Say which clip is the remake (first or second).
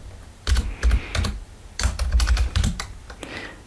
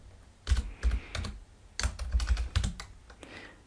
first